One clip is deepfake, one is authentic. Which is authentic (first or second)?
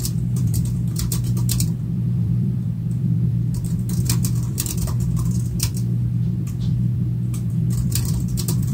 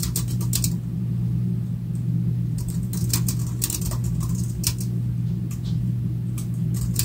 second